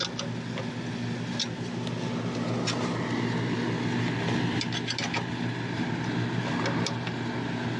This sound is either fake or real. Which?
real